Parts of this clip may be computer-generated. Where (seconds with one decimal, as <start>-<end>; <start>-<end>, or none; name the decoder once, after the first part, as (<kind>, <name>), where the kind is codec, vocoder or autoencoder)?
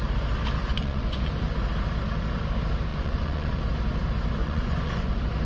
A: 0.7-1.3 (vocoder, Vocos); 2.9-3.6; 4.4-5.1